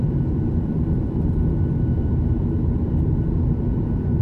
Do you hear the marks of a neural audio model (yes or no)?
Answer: yes